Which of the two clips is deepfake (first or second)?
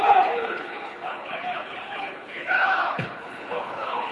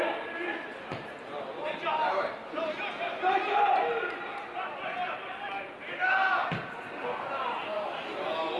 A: first